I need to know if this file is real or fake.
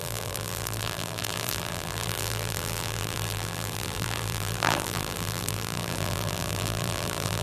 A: fake